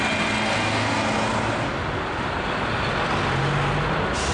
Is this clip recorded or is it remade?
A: recorded